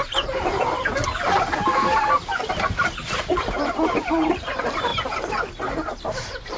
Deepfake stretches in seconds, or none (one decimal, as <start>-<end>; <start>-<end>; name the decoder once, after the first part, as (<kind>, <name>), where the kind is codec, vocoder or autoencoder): 0.0-1.1 (vocoder, BigVGAN v2); 4.0-4.9